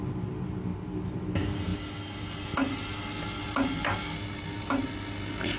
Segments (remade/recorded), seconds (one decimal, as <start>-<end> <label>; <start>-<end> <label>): 0.0-5.6 recorded